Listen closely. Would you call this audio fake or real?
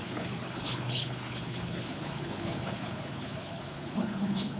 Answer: fake